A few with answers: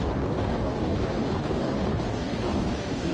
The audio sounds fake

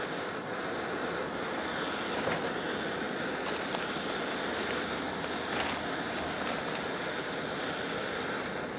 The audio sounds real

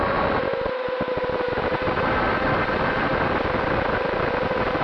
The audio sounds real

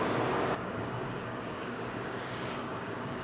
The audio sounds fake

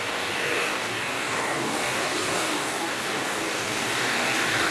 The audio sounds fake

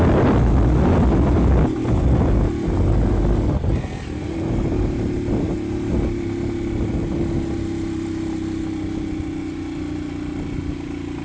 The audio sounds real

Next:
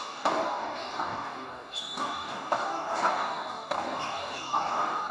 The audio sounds fake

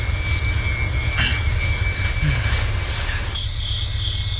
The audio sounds real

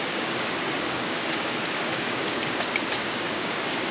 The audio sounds fake